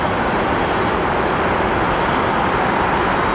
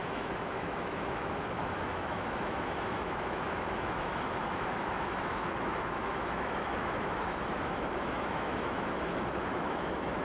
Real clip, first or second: first